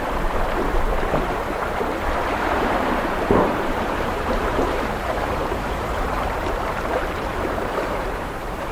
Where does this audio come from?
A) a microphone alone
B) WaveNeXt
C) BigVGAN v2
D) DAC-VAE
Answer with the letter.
C